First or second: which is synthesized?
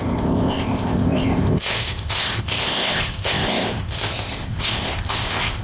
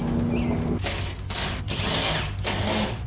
first